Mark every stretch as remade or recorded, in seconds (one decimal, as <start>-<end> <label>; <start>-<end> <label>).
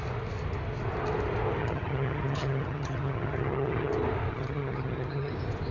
0.0-1.6 recorded; 1.6-3.9 remade; 3.9-4.3 recorded; 4.3-5.3 remade; 5.3-5.7 recorded